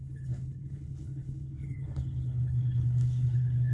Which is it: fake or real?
fake